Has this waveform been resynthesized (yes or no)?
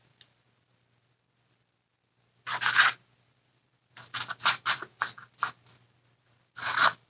no